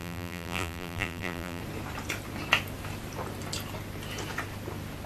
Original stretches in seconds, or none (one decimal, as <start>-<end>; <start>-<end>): 1.6-5.1